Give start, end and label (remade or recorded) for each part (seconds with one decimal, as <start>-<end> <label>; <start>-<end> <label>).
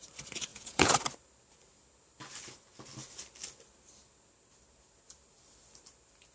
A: 0.0-0.5 recorded; 0.5-1.0 remade; 1.0-6.3 recorded